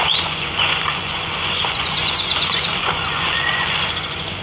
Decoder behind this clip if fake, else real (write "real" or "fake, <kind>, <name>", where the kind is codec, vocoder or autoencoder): fake, vocoder, Vocos